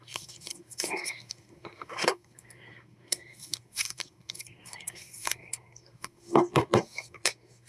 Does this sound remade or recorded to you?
remade